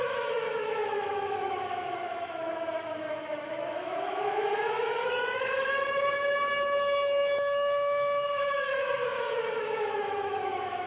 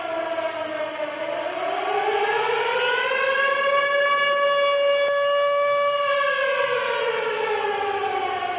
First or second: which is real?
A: second